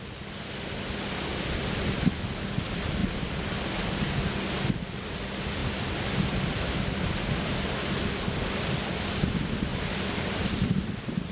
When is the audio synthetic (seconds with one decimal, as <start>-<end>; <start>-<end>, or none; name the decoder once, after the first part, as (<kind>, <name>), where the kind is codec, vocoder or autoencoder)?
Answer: 1.3-2.3 (vocoder, BigVGAN v2); 5.6-6.4; 9.7-11.3